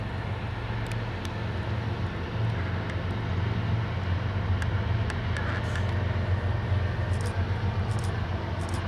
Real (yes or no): yes